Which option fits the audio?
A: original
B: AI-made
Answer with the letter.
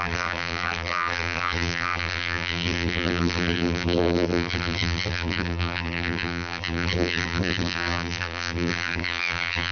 B